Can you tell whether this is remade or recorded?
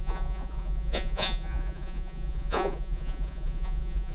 remade